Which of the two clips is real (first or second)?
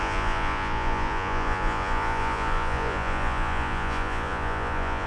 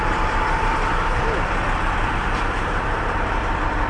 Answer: second